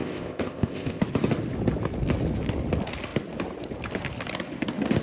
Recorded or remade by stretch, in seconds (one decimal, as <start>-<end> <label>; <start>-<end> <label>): 0.0-1.0 remade; 1.0-5.0 recorded